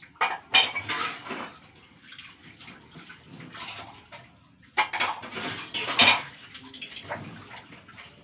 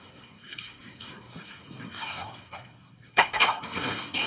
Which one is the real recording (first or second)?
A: first